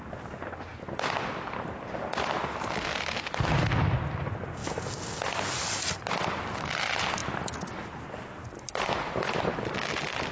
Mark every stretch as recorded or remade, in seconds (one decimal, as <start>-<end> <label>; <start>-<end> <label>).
0.0-10.3 recorded

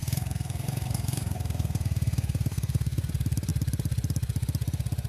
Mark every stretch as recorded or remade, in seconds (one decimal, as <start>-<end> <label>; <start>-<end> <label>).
0.0-3.1 remade; 3.1-5.1 recorded

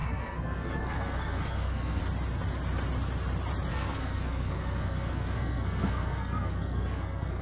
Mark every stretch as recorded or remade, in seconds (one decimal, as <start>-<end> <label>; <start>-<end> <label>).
0.0-2.0 remade; 2.0-3.7 recorded; 3.7-7.4 remade

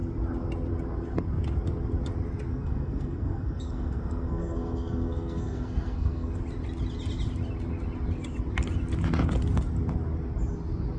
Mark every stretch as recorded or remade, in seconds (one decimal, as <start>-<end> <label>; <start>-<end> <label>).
0.0-2.5 recorded; 2.5-6.4 remade; 6.4-11.0 recorded

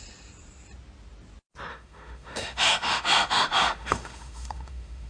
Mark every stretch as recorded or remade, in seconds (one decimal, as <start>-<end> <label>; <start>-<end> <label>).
0.0-1.7 recorded; 1.7-5.1 remade